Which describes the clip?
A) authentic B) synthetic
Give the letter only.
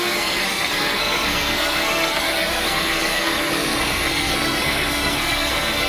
B